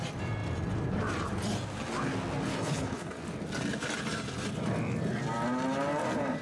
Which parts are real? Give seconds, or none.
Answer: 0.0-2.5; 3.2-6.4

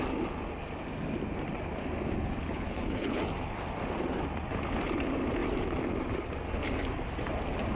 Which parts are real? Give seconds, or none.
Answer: 0.0-2.4; 3.2-7.8

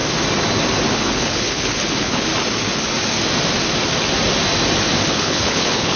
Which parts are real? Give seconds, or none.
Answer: 0.0-0.9; 2.3-5.1

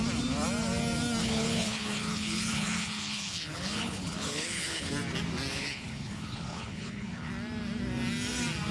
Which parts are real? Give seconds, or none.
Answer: 0.0-1.2; 4.9-5.5; 7.3-8.7

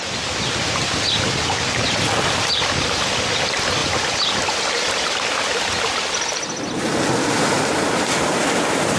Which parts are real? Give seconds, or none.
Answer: 0.0-9.0

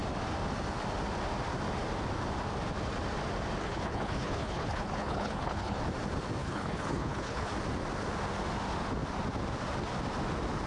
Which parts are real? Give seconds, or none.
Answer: 0.0-3.6; 5.8-6.4; 7.5-10.7